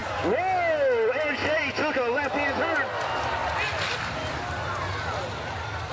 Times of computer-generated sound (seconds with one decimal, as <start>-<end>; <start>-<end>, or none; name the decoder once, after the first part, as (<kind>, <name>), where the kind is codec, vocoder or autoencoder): none